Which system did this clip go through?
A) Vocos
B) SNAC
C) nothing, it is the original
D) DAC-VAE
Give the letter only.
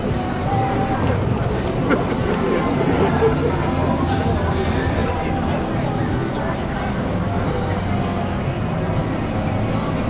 C